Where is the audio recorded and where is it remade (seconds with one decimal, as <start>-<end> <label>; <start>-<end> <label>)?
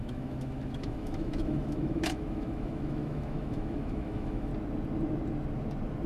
0.0-4.5 remade; 4.5-6.1 recorded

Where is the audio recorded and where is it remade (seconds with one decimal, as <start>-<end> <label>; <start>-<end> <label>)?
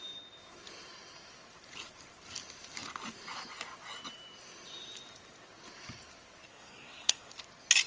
0.0-6.5 recorded; 6.5-7.3 remade; 7.3-7.9 recorded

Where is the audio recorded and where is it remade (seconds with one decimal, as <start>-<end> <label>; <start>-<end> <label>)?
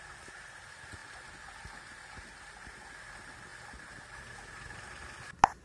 0.0-5.6 recorded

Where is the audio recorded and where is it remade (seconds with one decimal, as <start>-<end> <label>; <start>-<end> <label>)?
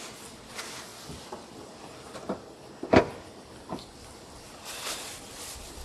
0.0-5.8 recorded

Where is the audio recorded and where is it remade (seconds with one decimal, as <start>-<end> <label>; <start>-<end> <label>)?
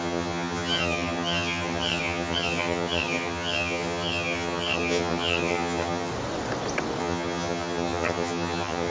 0.0-6.1 remade; 6.1-7.0 recorded; 7.0-8.9 remade